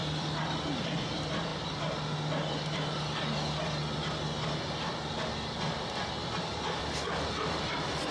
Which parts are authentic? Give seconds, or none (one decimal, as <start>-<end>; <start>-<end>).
1.5-6.4